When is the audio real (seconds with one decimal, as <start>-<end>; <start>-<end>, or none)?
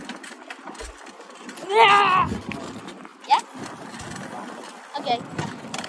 0.0-5.9